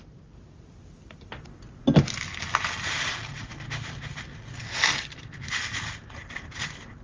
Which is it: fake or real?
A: real